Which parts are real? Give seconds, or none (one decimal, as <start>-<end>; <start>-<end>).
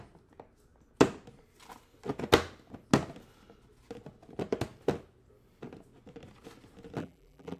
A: 0.0-7.0